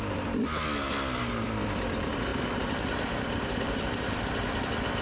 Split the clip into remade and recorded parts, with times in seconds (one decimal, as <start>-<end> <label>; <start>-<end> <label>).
0.0-2.3 recorded; 2.3-4.2 remade; 4.2-5.0 recorded